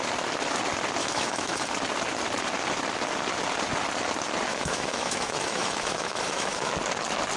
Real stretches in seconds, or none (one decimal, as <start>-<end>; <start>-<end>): 0.0-1.0; 1.7-4.5; 6.7-7.4